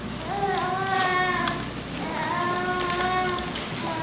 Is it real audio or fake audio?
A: real